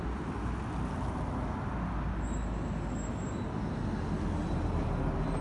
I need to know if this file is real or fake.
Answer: real